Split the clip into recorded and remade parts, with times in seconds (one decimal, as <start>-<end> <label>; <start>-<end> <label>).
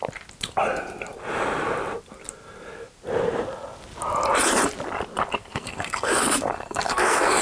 0.0-5.4 recorded; 5.4-7.4 remade